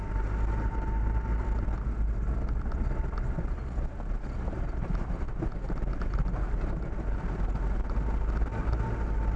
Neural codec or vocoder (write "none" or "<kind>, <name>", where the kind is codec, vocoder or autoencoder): none